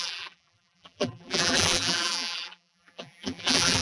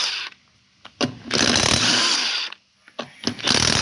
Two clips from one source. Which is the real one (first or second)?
second